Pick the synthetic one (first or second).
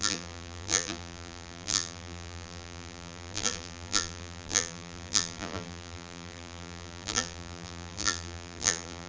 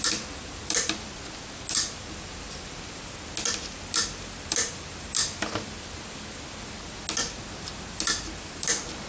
first